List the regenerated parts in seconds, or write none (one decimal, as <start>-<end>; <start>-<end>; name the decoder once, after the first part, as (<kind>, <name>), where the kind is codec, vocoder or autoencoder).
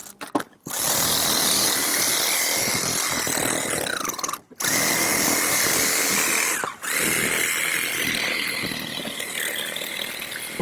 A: 5.1-6.3 (vocoder, BigVGAN v2); 7.7-10.6